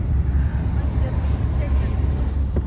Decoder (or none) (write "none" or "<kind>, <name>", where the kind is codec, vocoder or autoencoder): none